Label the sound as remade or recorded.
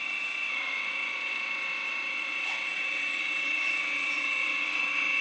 remade